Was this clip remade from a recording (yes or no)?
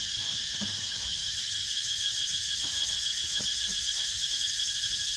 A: yes